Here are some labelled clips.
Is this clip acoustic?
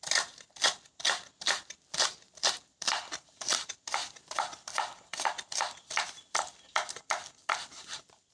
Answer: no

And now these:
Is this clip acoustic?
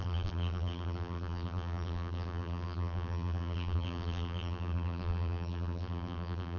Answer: no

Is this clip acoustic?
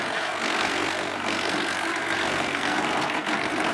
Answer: no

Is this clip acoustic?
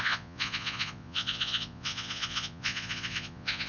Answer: no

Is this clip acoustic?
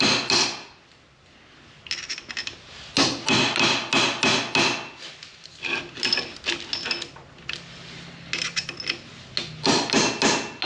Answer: yes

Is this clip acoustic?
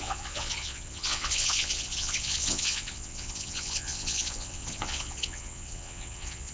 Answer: no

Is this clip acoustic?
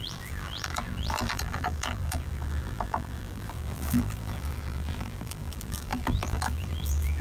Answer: no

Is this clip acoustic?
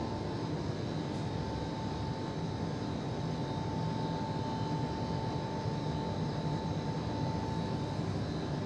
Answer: yes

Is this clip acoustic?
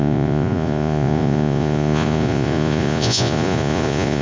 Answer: no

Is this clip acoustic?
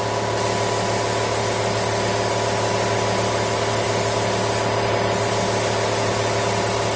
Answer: yes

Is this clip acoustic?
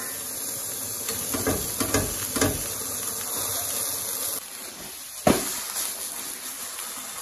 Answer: yes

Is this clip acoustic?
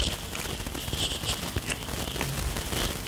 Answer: yes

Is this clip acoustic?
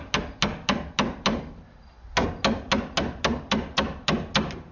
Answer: yes